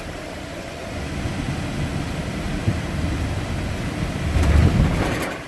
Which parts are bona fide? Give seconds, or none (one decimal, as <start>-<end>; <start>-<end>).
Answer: 0.0-0.5; 1.1-5.5